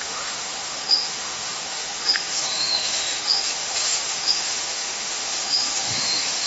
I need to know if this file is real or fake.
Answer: fake